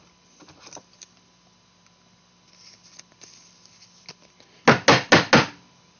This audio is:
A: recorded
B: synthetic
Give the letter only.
A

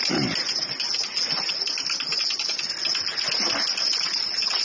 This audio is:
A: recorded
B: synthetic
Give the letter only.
A